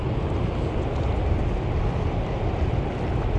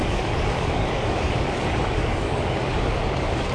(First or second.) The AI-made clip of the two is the second